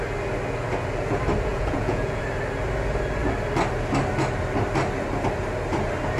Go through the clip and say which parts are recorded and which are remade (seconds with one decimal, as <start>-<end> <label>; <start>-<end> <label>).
0.0-1.5 recorded; 1.5-2.2 remade; 2.2-6.2 recorded